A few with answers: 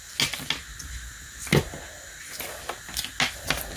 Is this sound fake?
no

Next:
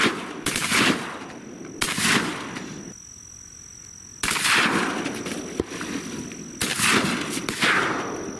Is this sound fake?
no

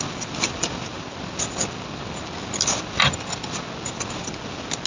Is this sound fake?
no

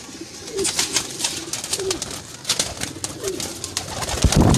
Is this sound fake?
no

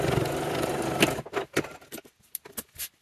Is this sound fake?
no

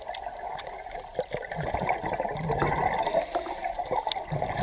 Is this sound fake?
no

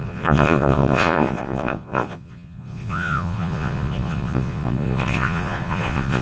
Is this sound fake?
yes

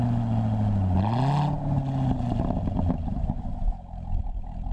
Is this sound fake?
no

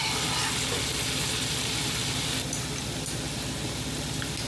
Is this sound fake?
no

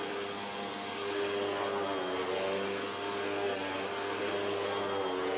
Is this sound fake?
no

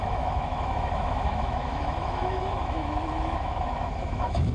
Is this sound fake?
yes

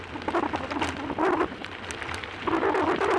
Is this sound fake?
no